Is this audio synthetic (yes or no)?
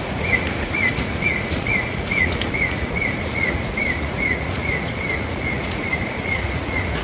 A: yes